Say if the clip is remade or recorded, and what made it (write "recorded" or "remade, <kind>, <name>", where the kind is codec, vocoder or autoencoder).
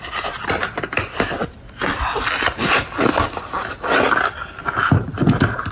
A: recorded